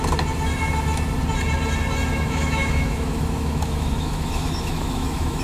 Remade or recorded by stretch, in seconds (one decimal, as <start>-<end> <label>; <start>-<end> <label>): 0.0-2.1 recorded; 2.1-5.4 remade